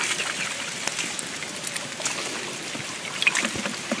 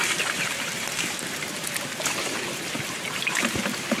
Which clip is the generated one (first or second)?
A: second